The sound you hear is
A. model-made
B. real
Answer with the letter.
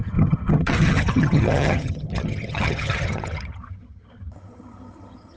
A